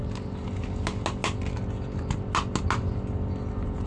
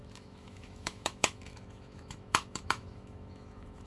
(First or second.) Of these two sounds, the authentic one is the first